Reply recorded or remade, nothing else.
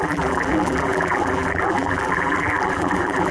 remade